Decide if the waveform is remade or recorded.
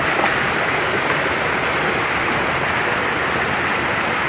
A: recorded